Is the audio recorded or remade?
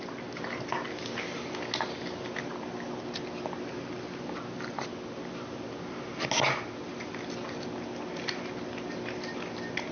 recorded